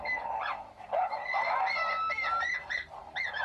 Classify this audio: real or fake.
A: real